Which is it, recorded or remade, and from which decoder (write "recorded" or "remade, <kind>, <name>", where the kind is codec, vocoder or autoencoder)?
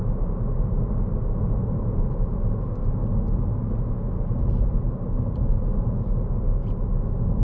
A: recorded